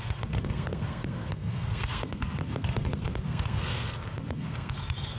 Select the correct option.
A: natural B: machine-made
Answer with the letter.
B